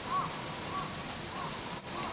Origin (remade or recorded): recorded